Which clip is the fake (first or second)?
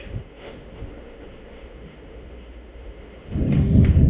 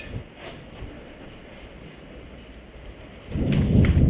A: first